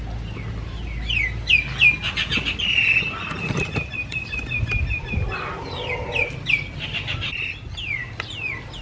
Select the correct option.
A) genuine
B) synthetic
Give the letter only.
A